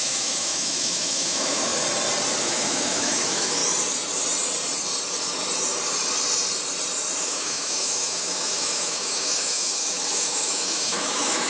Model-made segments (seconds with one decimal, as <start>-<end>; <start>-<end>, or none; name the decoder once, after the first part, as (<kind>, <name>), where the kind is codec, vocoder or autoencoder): 0.0-1.7 (autoencoder, DAC-VAE); 2.4-3.6; 7.2-11.5